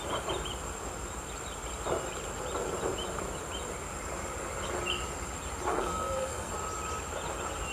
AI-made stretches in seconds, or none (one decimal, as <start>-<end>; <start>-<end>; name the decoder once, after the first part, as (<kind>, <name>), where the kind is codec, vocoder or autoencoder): 5.7-6.5 (codec, SNAC)